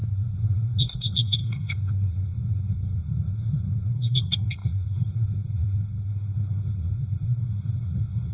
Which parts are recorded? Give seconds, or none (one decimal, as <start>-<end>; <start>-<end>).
none